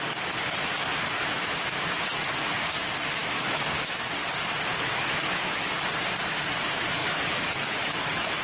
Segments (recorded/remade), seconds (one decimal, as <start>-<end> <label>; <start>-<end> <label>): 0.0-3.2 recorded; 3.2-4.0 remade; 4.0-4.7 recorded; 4.7-5.7 remade; 5.7-7.0 recorded; 7.0-8.4 remade